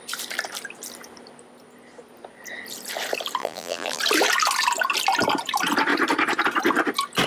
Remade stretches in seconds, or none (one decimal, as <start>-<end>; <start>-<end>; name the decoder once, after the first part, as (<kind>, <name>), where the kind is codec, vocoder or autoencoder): 3.4-4.0 (vocoder, BigVGAN v2)